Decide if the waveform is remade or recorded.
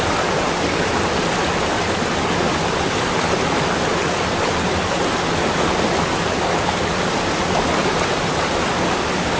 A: recorded